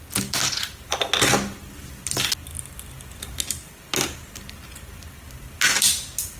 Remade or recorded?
recorded